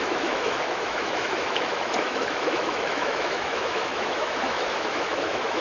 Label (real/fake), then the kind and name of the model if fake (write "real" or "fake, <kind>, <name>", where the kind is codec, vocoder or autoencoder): fake, autoencoder, DAC-VAE